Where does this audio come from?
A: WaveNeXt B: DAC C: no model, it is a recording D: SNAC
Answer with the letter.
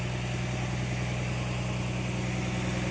C